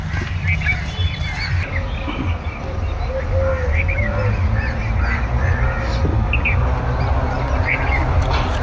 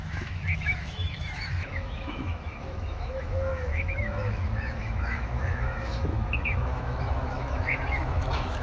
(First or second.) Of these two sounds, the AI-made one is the second